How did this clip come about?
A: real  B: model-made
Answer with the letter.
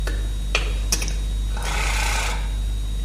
A